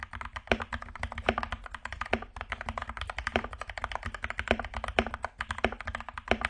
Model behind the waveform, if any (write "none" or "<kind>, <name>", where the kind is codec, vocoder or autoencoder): none